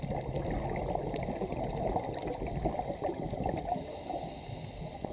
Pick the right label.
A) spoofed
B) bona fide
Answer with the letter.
B